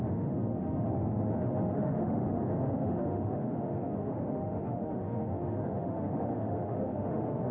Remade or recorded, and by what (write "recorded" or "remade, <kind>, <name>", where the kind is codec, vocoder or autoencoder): remade, autoencoder, DAC-VAE